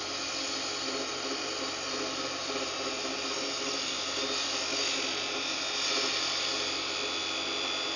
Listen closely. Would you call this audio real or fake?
real